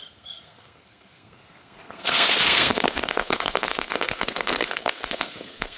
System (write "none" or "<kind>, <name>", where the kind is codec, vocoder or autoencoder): codec, SNAC